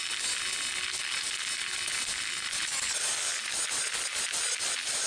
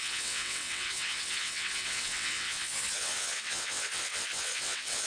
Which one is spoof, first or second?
second